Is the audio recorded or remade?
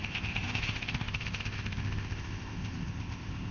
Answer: remade